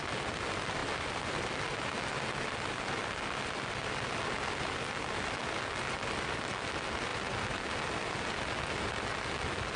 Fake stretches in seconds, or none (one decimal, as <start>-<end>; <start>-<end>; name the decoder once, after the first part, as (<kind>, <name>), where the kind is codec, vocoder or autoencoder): none